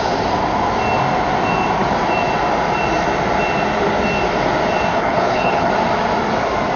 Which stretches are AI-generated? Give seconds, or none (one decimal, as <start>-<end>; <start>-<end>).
4.9-5.7